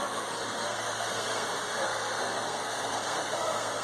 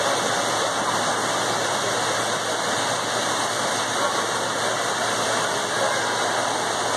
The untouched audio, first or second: second